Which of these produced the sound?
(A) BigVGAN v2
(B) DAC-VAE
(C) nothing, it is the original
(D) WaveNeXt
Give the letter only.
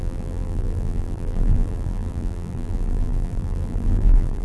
A